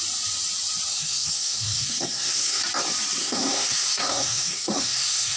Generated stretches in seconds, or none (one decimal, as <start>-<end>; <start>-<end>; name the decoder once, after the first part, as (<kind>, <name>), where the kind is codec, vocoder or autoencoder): 0.9-2.6 (codec, SNAC); 3.2-5.4